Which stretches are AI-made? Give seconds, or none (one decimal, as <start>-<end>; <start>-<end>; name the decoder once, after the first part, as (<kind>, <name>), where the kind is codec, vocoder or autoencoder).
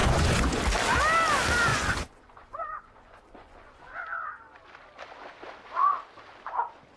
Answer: 0.0-0.6 (vocoder, Vocos); 1.7-4.4